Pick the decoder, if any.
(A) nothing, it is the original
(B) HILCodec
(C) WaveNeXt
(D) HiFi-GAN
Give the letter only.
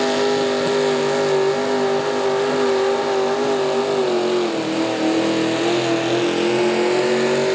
A